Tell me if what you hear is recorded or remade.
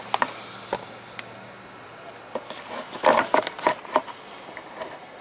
recorded